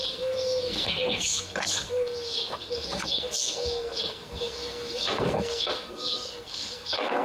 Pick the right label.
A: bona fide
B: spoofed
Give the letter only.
B